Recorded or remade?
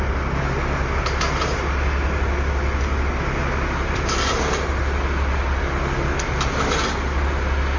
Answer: recorded